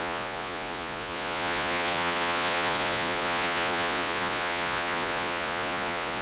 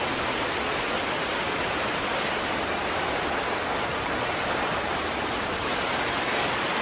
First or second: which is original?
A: second